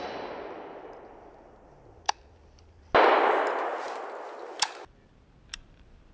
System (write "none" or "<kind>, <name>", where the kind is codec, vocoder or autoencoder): none